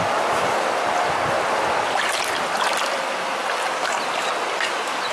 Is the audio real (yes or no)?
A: yes